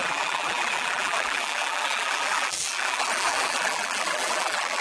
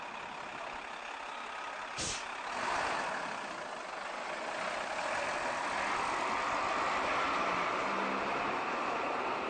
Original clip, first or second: second